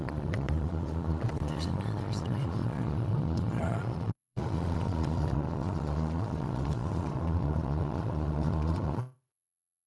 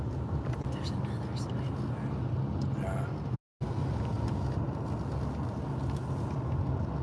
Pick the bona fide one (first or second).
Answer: second